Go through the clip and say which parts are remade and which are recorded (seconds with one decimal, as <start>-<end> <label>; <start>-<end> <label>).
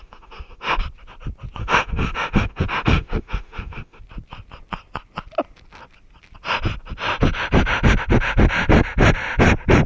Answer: 0.0-0.8 remade; 0.8-1.6 recorded; 1.6-4.0 remade; 4.0-9.9 recorded